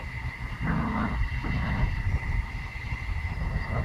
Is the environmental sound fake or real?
real